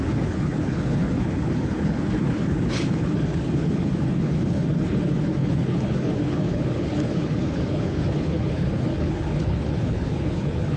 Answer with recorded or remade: remade